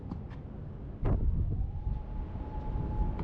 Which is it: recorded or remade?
recorded